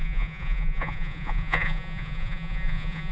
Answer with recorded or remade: remade